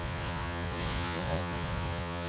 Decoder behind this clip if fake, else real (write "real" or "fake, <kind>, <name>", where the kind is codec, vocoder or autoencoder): fake, vocoder, Vocos